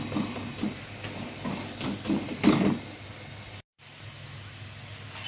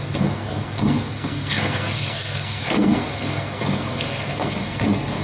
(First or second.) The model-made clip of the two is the second